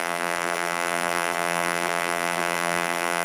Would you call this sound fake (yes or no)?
yes